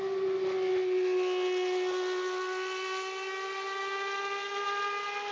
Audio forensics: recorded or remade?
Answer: recorded